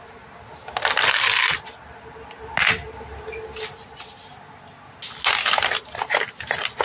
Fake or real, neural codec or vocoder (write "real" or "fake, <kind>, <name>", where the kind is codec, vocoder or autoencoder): real